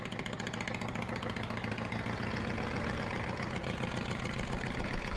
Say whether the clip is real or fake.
real